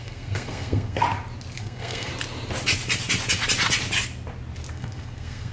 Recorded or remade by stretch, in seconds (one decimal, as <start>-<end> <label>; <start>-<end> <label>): 0.0-1.0 remade; 1.0-1.6 recorded; 1.6-2.1 remade; 2.1-4.7 recorded; 4.7-5.5 remade